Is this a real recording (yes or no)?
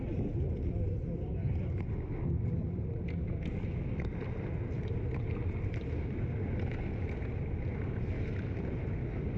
yes